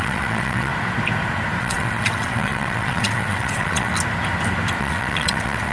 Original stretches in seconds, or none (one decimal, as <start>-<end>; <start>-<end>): 0.7-1.6; 3.9-4.8